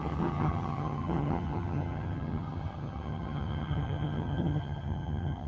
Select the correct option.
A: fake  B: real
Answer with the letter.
A